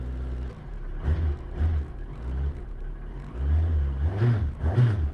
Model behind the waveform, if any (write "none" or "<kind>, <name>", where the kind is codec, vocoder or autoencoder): none